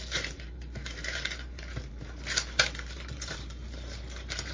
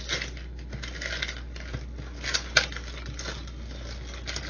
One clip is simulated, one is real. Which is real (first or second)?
second